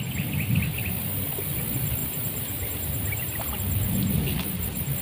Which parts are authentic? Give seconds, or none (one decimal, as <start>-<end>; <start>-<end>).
0.0-2.0; 3.4-5.0